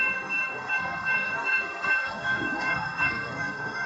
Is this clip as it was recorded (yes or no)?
no